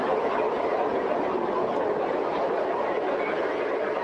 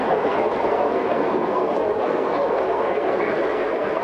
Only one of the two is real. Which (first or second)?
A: first